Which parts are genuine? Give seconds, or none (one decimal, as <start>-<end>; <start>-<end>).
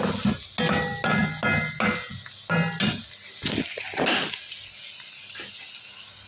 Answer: 0.0-6.3